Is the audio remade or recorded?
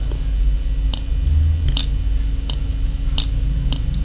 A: recorded